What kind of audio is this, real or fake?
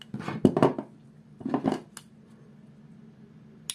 real